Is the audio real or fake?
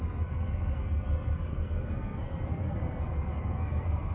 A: fake